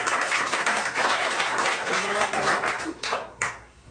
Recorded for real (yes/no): no